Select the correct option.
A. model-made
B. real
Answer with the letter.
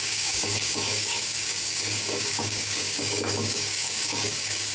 A